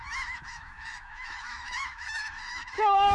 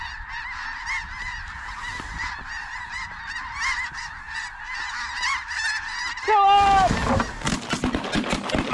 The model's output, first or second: first